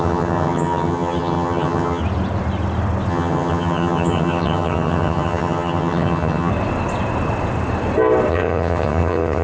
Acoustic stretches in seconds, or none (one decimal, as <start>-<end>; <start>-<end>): 2.0-3.1; 6.5-8.3